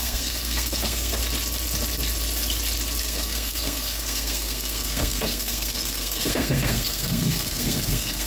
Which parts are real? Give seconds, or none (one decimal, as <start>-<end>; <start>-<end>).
1.2-3.0